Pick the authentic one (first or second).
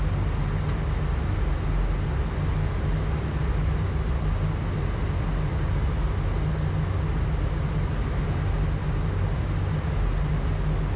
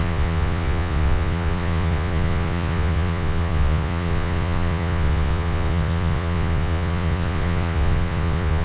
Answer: first